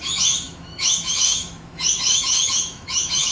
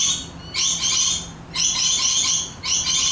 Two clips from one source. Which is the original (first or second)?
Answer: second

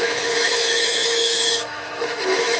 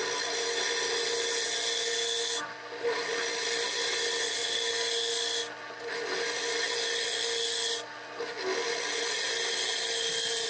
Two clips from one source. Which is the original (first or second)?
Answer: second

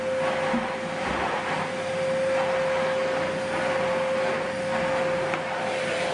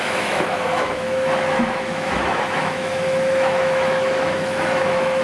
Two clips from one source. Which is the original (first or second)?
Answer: first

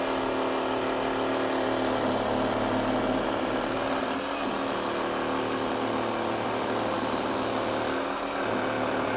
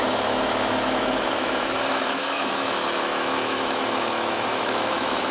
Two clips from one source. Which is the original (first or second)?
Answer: first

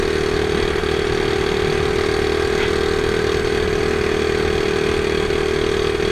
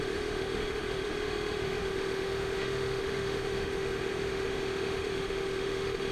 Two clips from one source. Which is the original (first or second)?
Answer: first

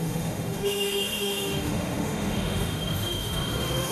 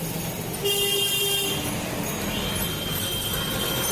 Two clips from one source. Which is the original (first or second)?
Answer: second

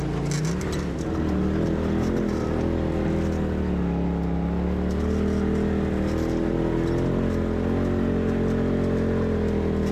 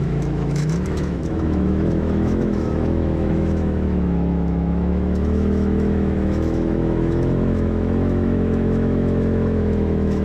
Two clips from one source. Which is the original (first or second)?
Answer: first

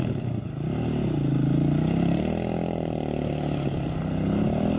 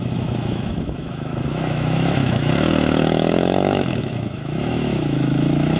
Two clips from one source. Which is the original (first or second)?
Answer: first